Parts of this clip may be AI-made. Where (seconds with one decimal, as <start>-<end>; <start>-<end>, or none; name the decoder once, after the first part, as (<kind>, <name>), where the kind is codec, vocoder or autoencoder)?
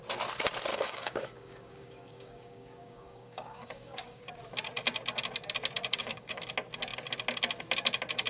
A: 0.7-4.3 (codec, DAC); 5.9-6.4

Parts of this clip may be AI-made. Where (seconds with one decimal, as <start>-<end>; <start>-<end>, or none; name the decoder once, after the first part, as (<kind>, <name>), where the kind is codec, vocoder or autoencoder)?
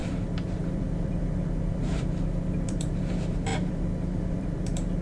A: 0.0-5.0 (vocoder, BigVGAN v2)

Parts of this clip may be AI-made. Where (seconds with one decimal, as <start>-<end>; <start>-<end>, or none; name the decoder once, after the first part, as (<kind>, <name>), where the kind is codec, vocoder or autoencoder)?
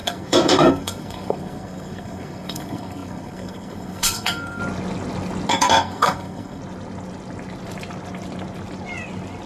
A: 0.0-4.6 (codec, SNAC); 5.5-6.6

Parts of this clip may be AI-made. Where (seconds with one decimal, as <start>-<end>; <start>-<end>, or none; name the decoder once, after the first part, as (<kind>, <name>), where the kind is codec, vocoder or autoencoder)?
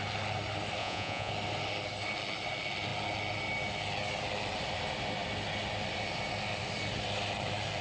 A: 0.8-1.3 (vocoder, Vocos)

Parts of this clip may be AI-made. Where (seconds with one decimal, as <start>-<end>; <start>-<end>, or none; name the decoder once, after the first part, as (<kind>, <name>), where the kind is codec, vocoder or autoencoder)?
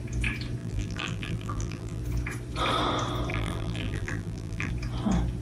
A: 0.6-2.0 (vocoder, BigVGAN v2); 3.3-4.7